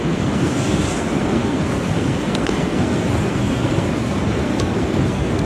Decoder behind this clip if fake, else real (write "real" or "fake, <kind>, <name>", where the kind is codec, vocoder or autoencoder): fake, codec, SNAC